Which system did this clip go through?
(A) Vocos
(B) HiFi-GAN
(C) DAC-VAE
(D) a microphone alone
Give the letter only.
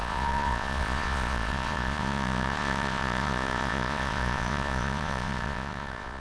A